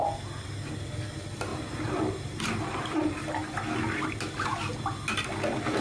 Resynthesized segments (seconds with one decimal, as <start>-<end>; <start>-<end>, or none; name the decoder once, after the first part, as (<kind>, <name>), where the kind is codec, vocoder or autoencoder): 1.5-2.4 (vocoder, BigVGAN v2)